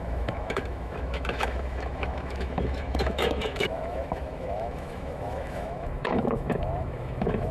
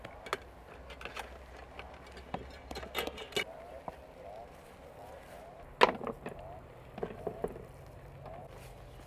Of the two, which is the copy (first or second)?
first